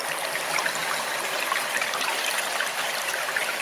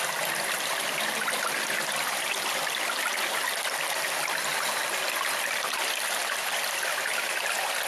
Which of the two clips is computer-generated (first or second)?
first